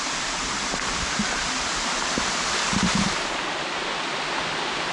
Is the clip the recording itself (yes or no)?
yes